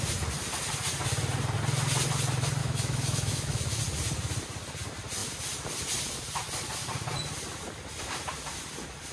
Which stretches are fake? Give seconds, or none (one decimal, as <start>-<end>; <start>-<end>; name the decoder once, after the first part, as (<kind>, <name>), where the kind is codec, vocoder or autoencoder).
2.6-3.8 (autoencoder, DAC-VAE)